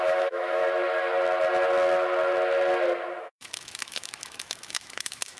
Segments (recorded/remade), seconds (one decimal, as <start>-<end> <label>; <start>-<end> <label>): 0.0-0.6 remade; 0.6-3.2 recorded; 3.2-5.4 remade